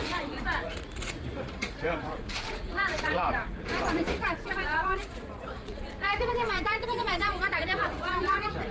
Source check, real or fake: fake